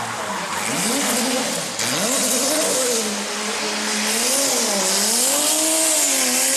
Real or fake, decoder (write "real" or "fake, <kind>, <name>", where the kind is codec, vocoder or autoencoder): real